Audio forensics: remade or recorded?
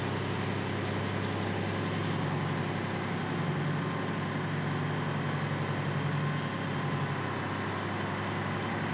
recorded